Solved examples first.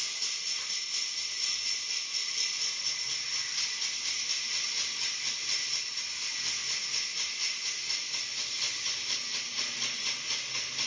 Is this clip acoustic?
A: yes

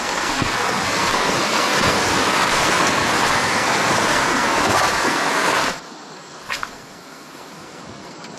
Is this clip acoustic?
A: no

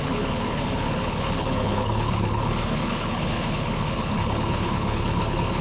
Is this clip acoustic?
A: no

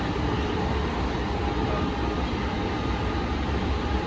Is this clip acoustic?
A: yes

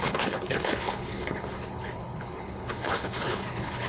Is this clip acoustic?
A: no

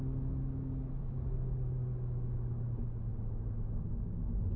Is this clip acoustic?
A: yes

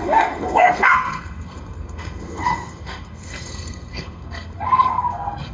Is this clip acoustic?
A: no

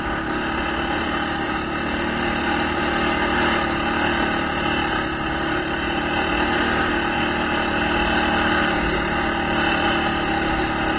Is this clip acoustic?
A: yes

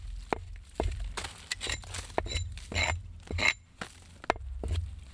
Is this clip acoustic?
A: yes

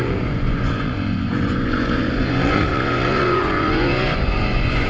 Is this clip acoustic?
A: no